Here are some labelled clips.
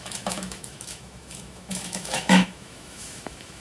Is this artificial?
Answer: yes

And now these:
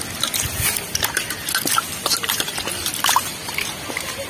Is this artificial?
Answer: no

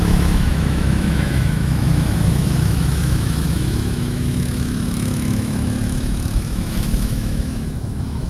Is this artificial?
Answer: yes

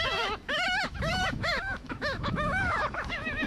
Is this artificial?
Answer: yes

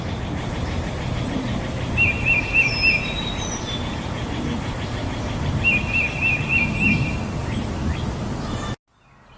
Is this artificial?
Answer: no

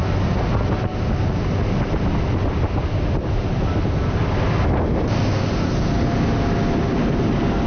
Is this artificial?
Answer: no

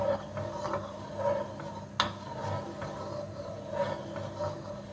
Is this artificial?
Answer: no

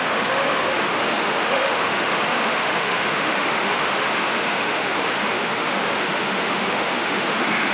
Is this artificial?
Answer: yes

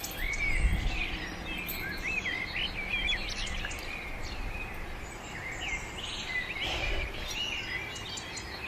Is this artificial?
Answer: no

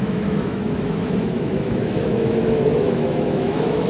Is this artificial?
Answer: yes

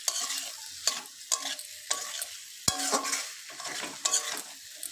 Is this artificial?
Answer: no